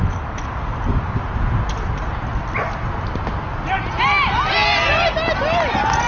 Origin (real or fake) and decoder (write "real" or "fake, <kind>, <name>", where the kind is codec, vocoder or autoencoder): real